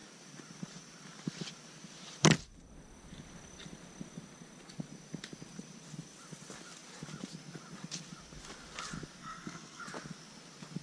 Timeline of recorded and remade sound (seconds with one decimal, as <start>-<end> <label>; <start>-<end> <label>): 0.0-9.2 recorded; 9.2-9.8 remade; 9.8-10.8 recorded